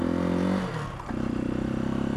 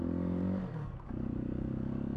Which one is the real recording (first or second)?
first